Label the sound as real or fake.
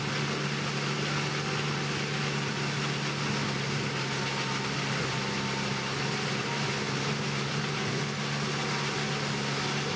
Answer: real